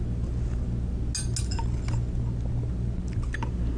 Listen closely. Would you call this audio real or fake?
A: real